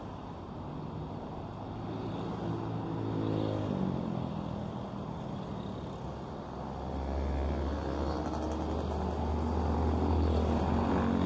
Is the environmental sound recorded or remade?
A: recorded